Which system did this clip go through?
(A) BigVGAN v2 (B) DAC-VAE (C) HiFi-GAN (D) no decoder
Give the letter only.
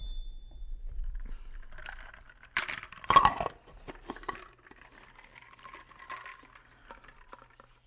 A